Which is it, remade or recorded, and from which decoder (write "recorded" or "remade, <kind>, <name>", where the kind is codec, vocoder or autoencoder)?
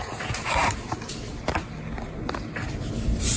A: recorded